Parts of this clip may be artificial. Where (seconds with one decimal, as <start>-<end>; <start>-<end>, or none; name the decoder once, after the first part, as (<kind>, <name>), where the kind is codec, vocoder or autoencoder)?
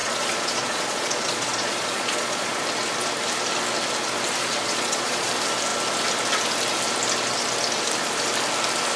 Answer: 0.0-2.6 (vocoder, Vocos); 4.4-5.3